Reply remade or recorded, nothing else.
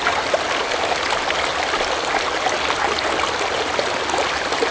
recorded